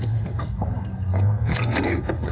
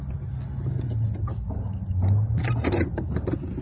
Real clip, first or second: second